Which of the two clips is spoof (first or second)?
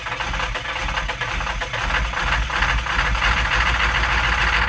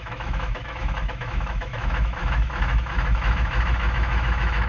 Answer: second